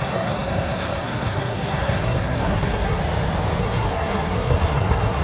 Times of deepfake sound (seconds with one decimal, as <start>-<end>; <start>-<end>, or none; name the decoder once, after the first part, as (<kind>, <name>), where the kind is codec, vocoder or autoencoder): 0.0-3.0 (codec, SNAC); 3.6-5.2